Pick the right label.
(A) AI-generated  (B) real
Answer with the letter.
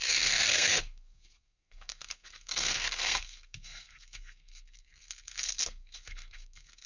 A